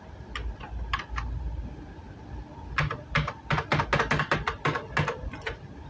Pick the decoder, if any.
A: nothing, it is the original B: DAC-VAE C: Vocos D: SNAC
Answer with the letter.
A